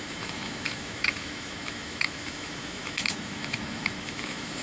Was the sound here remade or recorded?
remade